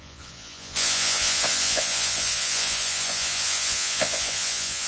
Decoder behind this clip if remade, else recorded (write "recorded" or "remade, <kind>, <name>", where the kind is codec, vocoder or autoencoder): remade, vocoder, Vocos